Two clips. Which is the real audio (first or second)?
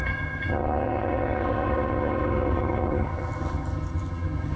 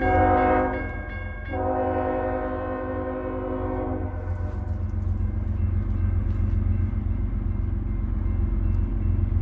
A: second